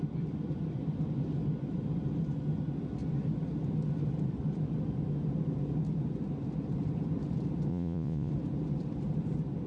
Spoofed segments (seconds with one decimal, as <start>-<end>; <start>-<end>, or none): 7.7-8.3